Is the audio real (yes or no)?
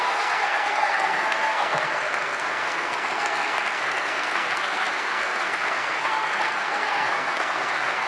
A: no